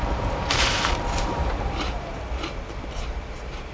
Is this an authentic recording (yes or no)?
no